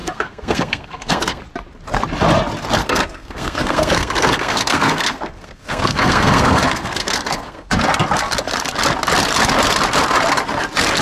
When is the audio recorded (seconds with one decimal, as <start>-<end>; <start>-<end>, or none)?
1.4-2.8; 7.7-11.0